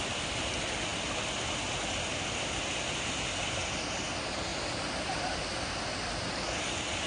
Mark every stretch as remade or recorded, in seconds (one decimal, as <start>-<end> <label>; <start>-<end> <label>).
0.0-7.1 recorded